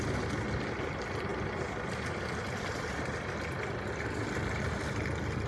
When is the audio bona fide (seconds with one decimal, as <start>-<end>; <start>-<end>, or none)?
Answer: 0.0-5.5